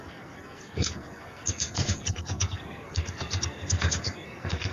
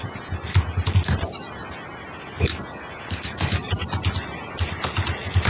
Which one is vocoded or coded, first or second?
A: first